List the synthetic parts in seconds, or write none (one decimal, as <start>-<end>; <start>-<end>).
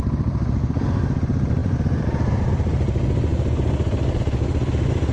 1.6-2.5